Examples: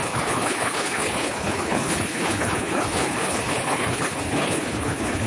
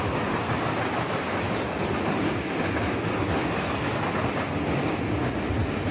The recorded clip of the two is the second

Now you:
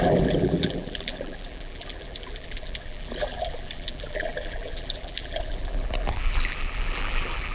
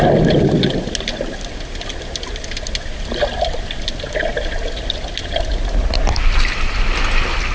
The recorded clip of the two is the second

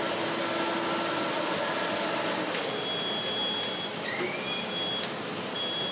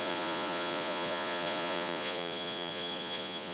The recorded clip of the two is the first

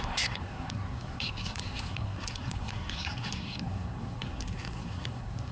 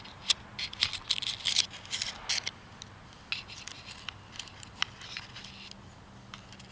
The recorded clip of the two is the second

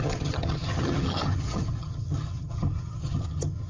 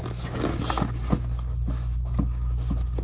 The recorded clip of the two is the second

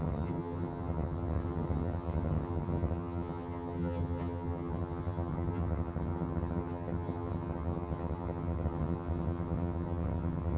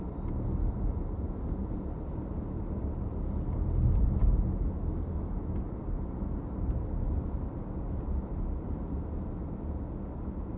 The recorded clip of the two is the second